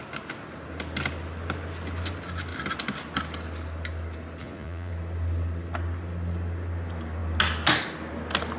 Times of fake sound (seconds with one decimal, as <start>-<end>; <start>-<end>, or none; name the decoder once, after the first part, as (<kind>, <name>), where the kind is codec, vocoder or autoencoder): 4.4-4.9 (vocoder, Vocos)